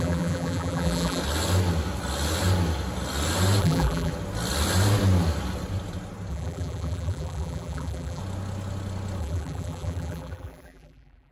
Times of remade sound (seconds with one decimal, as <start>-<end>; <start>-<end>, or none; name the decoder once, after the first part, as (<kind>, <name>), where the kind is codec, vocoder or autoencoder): 0.0-1.2 (vocoder, BigVGAN v2); 3.6-4.1; 6.3-8.2; 9.2-11.3